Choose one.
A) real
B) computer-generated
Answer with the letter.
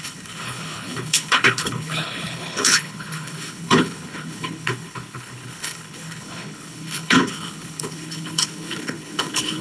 B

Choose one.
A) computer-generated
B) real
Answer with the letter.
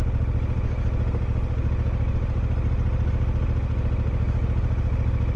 B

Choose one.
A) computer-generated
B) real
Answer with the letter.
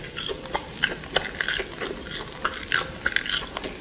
B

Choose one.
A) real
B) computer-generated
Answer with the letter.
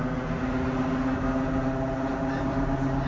A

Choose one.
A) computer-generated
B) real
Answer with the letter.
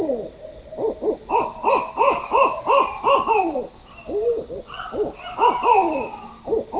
B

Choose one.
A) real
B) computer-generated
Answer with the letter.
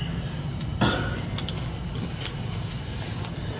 A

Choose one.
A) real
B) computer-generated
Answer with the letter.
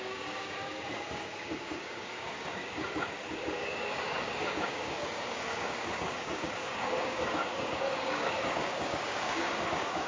B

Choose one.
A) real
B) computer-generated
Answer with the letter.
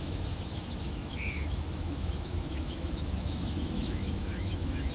B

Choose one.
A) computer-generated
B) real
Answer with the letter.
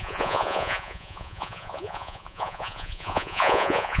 A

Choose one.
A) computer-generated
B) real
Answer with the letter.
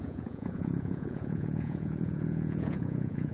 A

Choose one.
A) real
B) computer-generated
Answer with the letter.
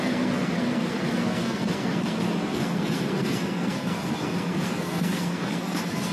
B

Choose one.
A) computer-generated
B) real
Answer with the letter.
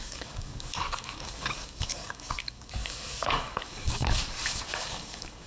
A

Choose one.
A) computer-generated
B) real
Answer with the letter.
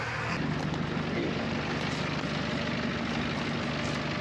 B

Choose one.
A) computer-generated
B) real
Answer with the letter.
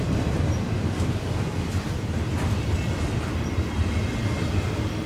B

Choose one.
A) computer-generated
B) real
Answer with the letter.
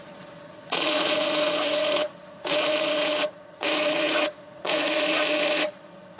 A